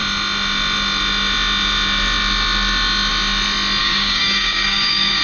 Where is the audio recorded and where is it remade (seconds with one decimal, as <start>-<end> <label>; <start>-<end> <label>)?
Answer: 0.0-3.8 recorded; 3.8-5.2 remade